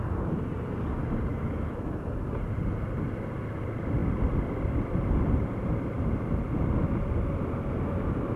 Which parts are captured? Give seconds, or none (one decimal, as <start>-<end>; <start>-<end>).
0.0-1.3; 2.1-8.4